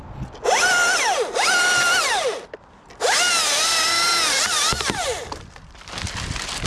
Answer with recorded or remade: recorded